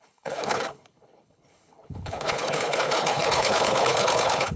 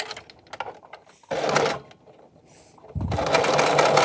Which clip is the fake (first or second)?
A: first